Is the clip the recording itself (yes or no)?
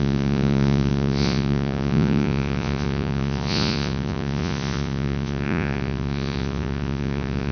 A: no